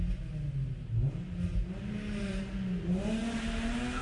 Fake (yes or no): no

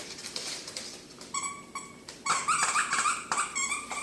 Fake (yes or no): yes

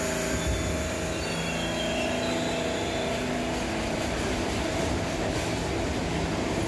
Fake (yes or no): no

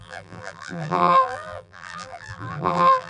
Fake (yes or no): yes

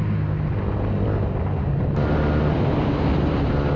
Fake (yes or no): no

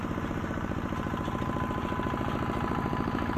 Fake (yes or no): yes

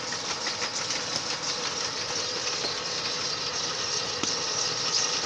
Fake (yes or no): no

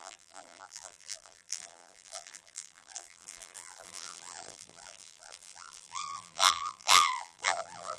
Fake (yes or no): yes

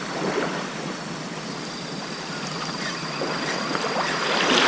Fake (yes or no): no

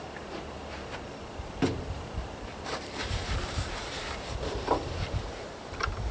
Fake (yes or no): yes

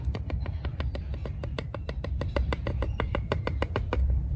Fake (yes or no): yes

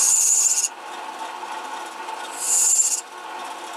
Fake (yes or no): no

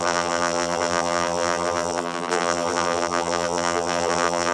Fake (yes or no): yes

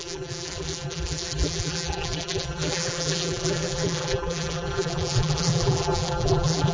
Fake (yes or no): yes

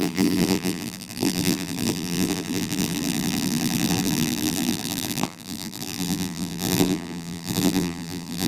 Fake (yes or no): yes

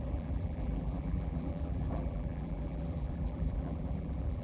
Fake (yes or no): yes